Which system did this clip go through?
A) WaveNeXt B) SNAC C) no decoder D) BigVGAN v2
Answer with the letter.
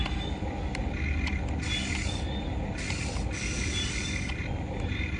C